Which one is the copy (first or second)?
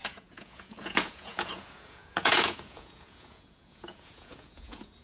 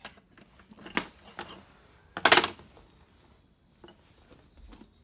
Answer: first